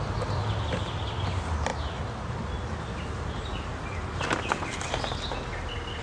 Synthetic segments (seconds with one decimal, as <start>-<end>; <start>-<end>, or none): none